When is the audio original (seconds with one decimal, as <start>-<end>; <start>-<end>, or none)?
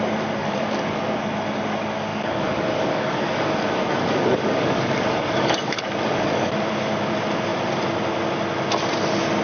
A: 0.0-0.4; 1.2-2.1; 6.5-9.4